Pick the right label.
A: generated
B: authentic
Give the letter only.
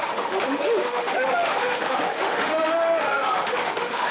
A